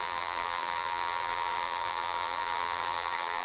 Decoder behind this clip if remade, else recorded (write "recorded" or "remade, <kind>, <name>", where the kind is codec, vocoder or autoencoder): remade, vocoder, BigVGAN v2